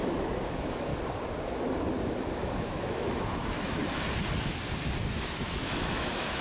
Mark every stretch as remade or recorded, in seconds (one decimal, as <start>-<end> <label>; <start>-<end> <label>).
0.0-0.9 remade; 0.9-2.0 recorded; 2.0-3.8 remade; 3.8-5.1 recorded; 5.1-6.4 remade